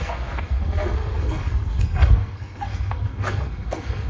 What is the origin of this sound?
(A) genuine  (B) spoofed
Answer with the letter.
B